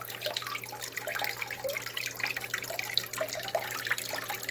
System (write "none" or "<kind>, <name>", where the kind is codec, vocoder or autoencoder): none